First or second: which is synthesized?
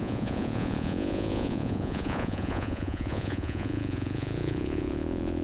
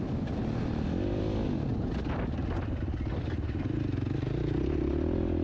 first